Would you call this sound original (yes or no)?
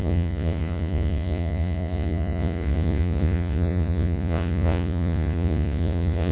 no